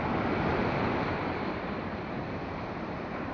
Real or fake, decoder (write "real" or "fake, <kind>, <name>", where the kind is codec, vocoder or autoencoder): real